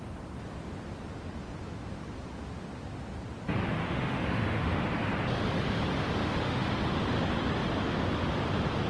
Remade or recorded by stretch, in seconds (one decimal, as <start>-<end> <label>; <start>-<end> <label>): 0.0-3.8 recorded; 3.8-4.8 remade; 4.8-6.2 recorded; 6.2-6.7 remade; 6.7-8.9 recorded